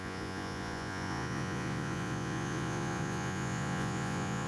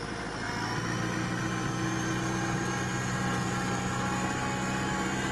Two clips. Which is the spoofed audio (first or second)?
first